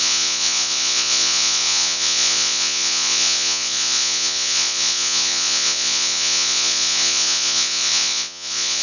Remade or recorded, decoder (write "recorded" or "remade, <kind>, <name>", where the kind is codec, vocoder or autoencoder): remade, vocoder, Vocos